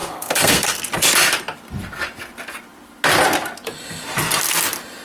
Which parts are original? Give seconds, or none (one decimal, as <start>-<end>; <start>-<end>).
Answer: 0.8-5.0